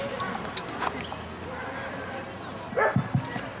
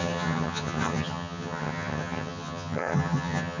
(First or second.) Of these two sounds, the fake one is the second